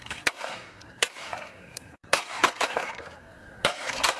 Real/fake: fake